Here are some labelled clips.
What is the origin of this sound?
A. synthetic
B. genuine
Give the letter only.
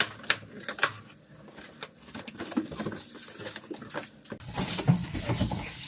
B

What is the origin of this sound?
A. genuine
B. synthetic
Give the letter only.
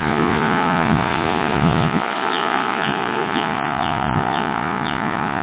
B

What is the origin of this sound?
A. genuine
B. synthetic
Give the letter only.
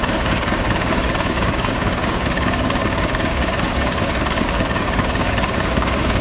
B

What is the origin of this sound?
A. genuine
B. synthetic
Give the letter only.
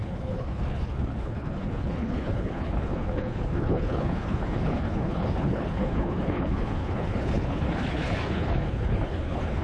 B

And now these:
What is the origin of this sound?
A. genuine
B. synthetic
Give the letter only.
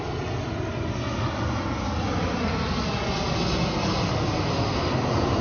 A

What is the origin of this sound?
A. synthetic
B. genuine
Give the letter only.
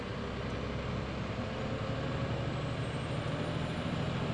B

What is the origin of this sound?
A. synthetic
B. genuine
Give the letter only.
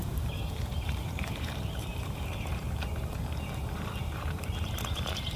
A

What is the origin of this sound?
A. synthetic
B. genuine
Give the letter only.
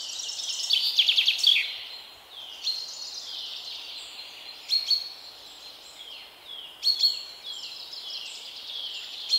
B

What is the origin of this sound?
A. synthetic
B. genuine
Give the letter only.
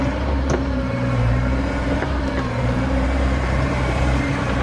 A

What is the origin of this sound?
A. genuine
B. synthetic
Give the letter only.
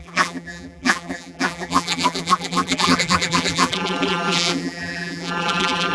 B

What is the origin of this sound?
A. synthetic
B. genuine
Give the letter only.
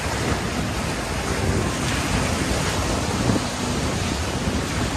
B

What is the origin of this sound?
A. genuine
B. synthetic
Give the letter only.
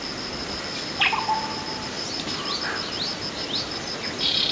A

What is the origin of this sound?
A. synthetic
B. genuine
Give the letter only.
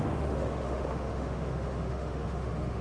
A